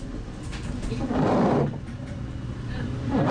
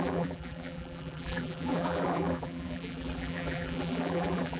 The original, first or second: first